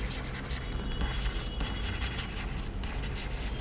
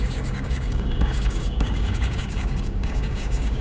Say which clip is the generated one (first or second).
second